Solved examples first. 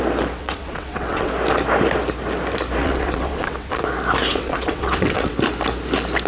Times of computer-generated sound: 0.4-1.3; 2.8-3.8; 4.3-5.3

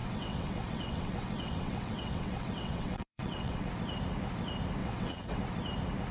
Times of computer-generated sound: 0.0-3.7; 4.8-5.4

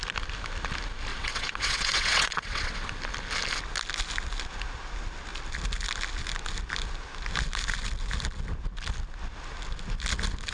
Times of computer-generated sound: 1.1-2.9

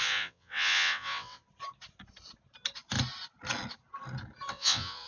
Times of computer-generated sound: 0.0-1.4; 4.5-5.1

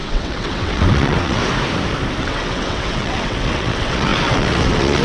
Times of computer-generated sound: 0.0-1.4; 2.2-5.0

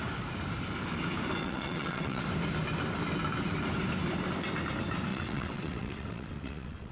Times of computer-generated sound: 1.4-2.2; 5.1-6.9